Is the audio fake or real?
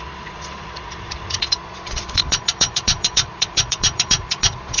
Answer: fake